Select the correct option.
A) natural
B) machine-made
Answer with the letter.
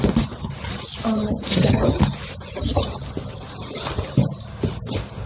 A